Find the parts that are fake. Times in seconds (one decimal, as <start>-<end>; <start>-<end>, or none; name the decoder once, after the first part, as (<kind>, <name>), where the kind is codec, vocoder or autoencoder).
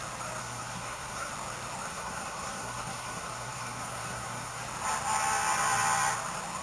0.4-1.3 (codec, SNAC); 1.9-4.6